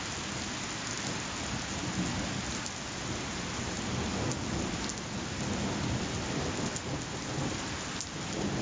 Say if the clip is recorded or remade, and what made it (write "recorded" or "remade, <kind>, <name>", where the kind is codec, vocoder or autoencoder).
recorded